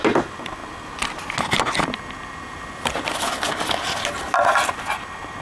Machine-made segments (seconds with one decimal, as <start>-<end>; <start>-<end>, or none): none